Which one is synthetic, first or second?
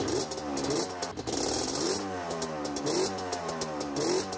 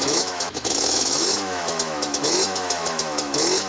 second